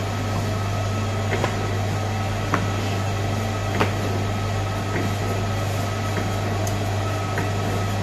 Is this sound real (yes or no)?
yes